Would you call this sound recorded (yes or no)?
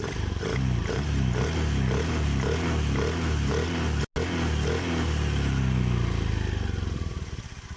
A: yes